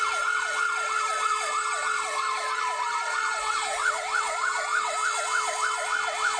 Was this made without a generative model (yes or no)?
no